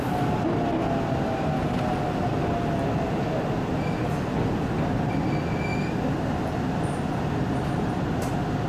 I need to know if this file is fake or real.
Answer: real